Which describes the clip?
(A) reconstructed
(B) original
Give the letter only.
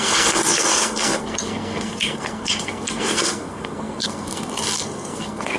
A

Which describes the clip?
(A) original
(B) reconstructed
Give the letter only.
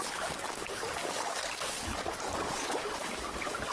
B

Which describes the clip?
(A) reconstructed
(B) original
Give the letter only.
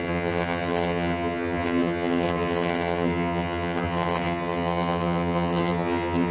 A